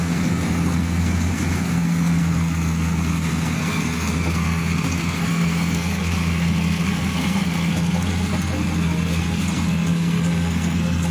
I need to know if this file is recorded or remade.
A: remade